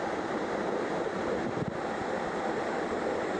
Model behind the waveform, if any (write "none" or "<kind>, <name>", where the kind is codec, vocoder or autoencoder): none